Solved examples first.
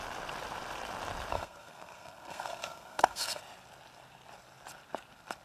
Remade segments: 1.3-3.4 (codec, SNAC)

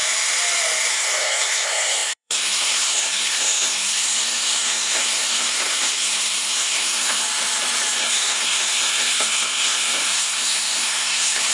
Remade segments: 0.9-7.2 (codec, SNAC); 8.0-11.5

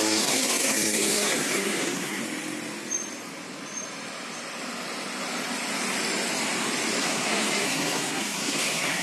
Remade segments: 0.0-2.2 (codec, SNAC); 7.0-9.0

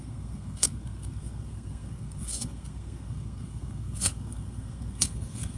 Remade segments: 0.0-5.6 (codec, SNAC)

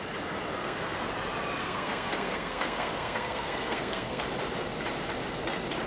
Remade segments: 0.6-1.1 (codec, SNAC); 1.6-4.2